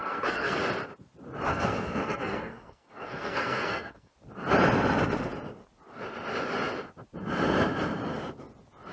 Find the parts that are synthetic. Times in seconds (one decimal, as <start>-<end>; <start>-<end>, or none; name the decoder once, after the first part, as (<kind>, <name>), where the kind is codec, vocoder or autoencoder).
0.0-0.6 (codec, SNAC); 1.5-4.1